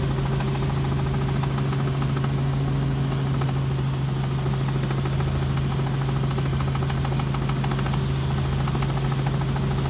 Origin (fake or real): real